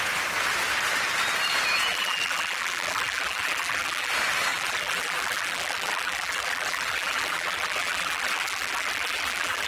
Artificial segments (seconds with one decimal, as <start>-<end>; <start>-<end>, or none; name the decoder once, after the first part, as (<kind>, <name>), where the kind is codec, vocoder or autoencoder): 1.9-4.1 (vocoder, BigVGAN v2); 4.5-9.7